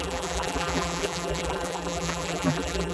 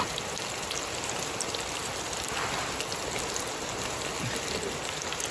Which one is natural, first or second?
second